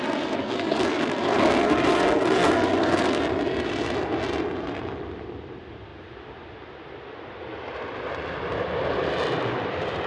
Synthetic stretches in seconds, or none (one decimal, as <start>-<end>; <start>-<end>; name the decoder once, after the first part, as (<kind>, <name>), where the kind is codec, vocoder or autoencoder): 0.4-3.2 (codec, SNAC)